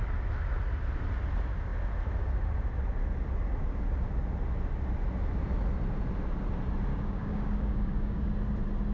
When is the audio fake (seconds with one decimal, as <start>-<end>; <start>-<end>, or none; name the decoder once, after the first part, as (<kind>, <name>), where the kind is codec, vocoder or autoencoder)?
6.9-8.3 (codec, DAC)